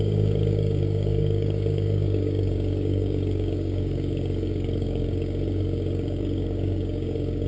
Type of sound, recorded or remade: remade